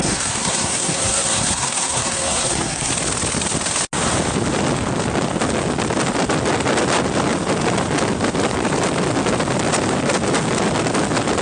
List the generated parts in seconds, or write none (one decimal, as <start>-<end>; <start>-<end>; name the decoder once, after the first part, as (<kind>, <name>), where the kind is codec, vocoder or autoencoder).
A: 0.0-2.9 (codec, SNAC)